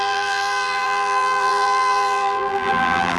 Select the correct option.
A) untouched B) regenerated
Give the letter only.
B